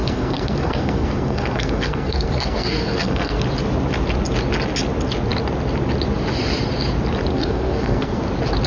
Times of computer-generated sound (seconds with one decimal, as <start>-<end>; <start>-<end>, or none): 0.0-3.4; 7.3-8.2